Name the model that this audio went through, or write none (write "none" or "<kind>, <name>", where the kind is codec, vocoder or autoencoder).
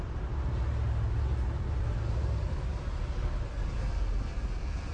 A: none